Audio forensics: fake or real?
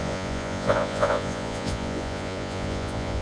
fake